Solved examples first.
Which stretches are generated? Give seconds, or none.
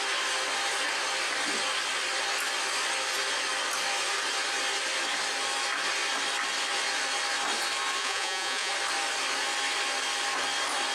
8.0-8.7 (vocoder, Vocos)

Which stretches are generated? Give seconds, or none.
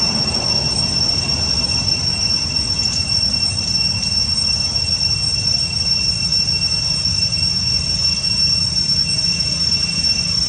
2.2-3.3 (vocoder, Vocos)